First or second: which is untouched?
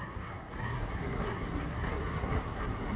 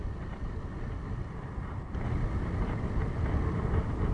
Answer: second